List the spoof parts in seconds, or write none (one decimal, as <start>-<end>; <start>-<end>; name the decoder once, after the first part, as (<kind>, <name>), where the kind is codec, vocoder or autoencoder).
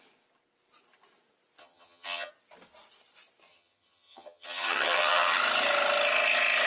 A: 1.6-2.3 (vocoder, HiFi-GAN); 3.5-5.4